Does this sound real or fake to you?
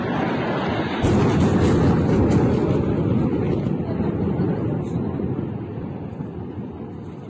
real